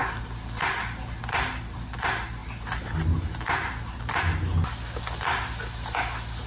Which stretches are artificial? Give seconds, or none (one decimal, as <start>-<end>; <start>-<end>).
none